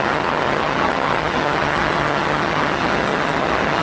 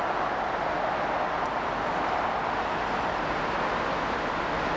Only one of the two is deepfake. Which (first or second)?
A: first